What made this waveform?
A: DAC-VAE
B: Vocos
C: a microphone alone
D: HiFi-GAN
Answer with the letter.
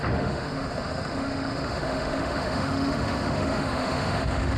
A